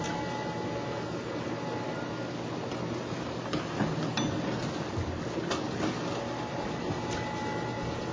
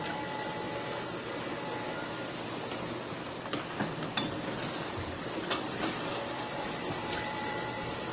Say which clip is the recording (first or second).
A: first